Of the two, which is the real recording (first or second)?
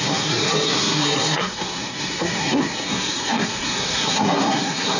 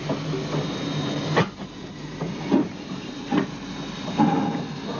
second